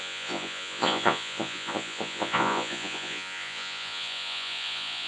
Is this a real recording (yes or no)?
no